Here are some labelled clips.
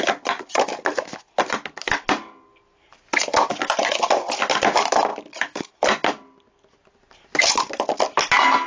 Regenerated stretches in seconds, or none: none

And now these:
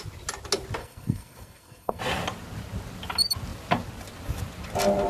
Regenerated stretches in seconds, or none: 0.8-2.0 (codec, SNAC)

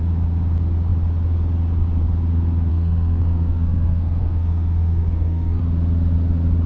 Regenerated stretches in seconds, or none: 2.7-5.6 (codec, SNAC)

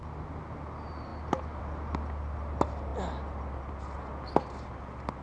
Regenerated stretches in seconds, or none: none

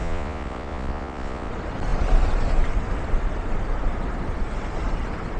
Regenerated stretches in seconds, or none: 0.0-1.5 (vocoder, Vocos)